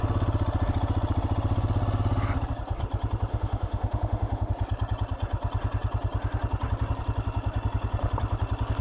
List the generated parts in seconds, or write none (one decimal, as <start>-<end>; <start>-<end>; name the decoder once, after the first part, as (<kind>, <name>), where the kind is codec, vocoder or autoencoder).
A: 3.3-4.5 (autoencoder, DAC-VAE)

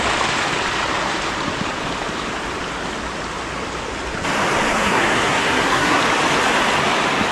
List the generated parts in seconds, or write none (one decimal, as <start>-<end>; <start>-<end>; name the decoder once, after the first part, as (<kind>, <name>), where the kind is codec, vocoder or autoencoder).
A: 4.7-6.0 (codec, SNAC)

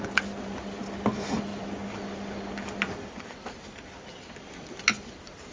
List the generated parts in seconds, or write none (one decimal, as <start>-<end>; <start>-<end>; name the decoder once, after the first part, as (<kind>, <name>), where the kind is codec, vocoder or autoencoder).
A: none

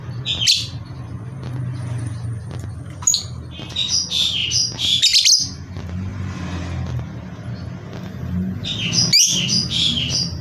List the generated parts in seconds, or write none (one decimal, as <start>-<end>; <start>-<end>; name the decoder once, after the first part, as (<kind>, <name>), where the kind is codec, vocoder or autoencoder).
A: none

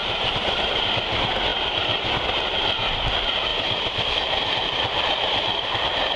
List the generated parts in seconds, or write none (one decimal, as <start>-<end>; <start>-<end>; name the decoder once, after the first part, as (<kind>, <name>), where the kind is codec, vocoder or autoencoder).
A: 0.0-0.8 (vocoder, BigVGAN v2); 3.5-4.1